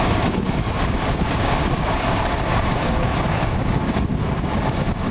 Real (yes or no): no